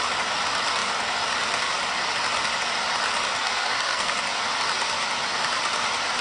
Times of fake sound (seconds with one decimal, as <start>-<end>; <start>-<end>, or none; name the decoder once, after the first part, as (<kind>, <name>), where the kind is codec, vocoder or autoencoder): 3.4-4.1 (codec, SNAC)